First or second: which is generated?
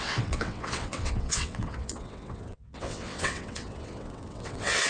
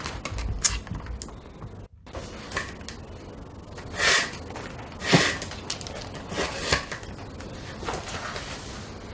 first